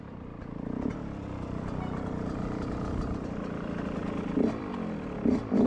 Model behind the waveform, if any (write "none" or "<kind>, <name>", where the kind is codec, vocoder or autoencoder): vocoder, BigVGAN v2